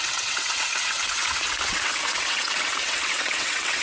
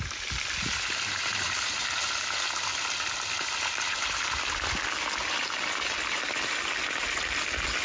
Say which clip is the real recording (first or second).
second